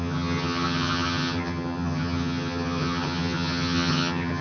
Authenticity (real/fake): fake